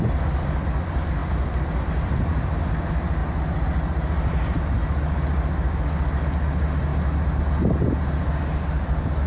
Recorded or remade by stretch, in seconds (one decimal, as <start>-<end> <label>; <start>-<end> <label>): 0.0-9.3 recorded